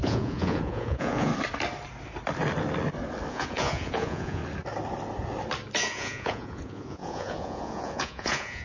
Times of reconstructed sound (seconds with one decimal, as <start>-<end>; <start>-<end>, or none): 0.0-1.3; 3.3-4.4; 5.8-8.6

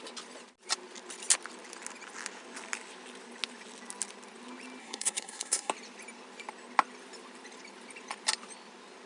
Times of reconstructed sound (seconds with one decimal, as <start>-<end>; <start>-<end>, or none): 4.8-5.7